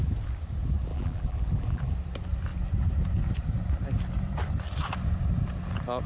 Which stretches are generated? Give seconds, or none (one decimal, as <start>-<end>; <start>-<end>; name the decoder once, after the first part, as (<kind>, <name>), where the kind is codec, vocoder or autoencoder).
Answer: 0.9-1.9 (vocoder, BigVGAN v2)